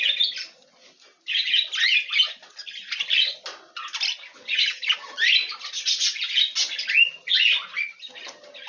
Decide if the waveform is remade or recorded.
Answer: recorded